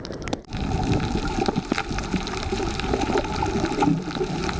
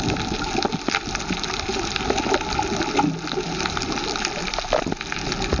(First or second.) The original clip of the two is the second